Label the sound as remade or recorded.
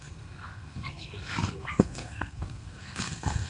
remade